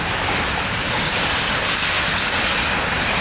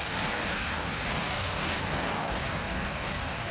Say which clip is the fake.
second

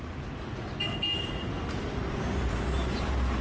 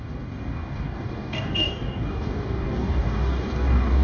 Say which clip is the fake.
second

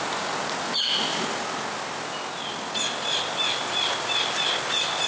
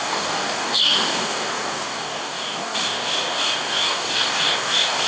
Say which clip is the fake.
second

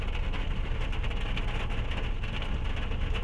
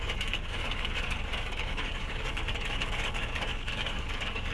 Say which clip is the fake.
second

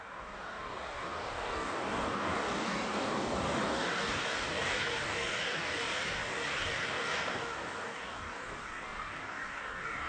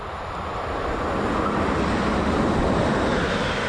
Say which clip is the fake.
first